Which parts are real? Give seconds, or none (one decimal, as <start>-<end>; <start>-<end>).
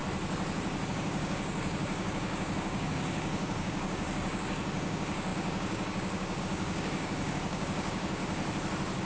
0.0-0.9; 8.2-9.0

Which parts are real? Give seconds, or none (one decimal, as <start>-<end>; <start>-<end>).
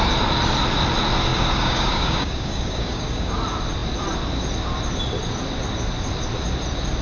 0.0-1.3; 3.3-7.0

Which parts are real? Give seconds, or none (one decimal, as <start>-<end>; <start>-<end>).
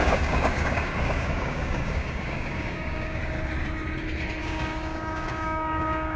3.2-4.4